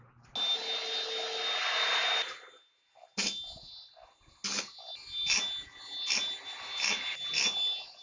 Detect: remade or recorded recorded